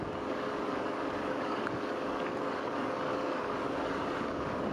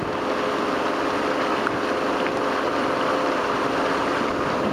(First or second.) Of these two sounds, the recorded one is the second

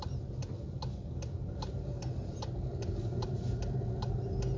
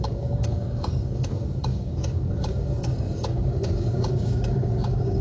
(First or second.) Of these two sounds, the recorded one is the first